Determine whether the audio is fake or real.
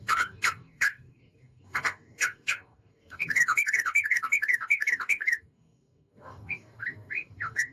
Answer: fake